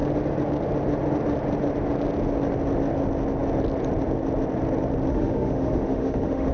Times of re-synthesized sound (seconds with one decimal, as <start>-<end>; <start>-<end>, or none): 5.1-6.5